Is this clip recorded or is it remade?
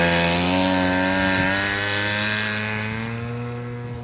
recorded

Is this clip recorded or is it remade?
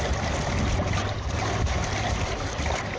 recorded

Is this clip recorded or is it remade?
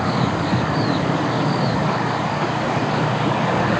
remade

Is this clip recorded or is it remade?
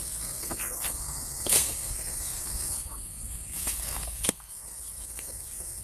remade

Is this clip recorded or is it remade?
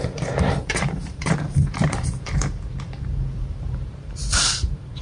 remade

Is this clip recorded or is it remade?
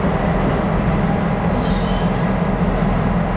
recorded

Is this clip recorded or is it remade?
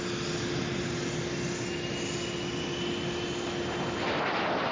recorded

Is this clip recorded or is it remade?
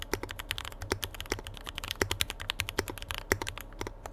recorded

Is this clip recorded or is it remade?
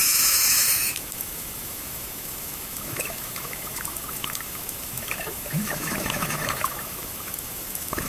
remade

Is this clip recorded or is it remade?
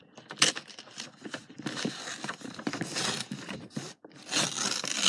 recorded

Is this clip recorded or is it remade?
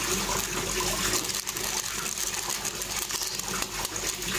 recorded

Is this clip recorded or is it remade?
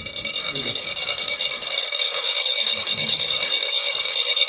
remade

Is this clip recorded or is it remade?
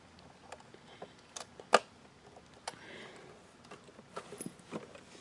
recorded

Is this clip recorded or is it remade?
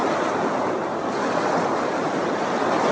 recorded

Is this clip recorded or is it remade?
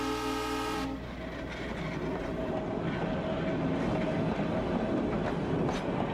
recorded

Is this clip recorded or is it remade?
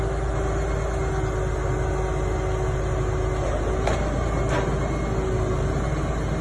recorded